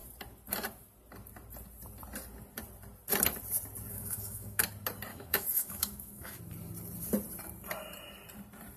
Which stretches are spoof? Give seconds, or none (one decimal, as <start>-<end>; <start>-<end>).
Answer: 3.9-4.6; 5.1-6.4